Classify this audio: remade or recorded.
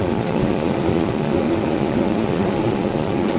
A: remade